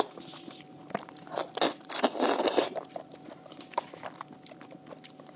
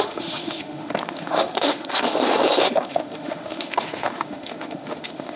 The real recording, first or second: first